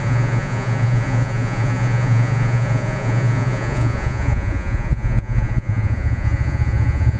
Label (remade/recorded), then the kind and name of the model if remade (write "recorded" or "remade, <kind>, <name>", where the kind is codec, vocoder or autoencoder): remade, vocoder, Vocos